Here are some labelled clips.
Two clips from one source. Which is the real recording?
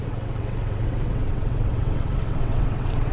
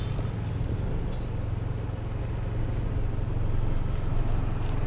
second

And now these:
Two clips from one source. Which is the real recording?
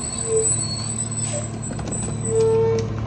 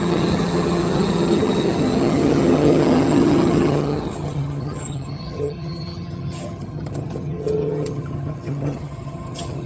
first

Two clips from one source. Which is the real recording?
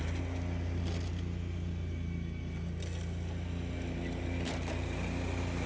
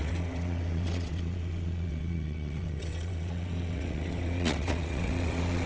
first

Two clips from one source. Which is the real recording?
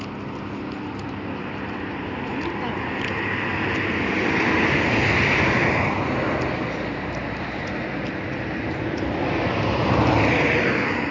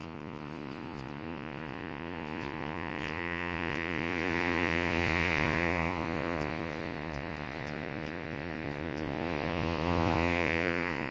first